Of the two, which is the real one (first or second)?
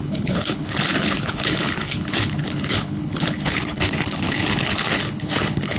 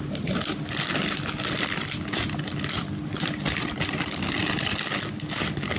second